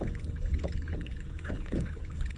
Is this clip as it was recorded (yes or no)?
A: no